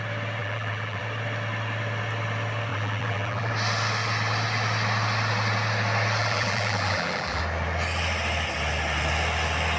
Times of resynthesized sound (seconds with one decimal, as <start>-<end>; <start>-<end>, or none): 0.4-1.0; 2.7-3.5; 6.2-7.4